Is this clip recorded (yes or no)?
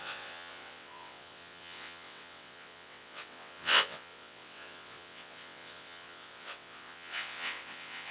no